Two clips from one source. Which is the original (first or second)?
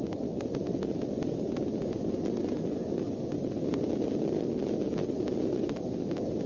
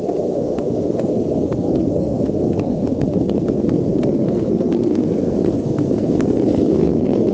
first